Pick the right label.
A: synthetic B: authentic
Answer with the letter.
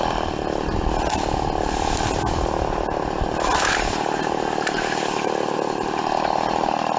B